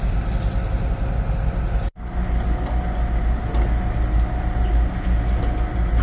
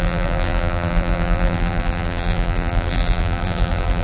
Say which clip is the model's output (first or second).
second